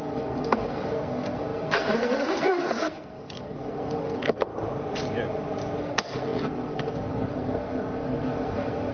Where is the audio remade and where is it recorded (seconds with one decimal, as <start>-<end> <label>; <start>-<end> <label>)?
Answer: 0.0-4.5 remade; 4.5-5.8 recorded; 5.8-8.9 remade